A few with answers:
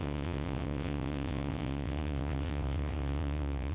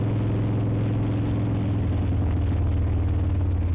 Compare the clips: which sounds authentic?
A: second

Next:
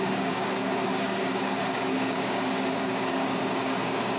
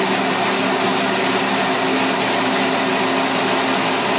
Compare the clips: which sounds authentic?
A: second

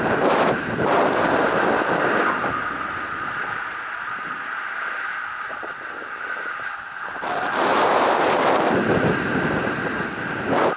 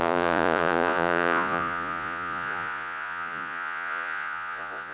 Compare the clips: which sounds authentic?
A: first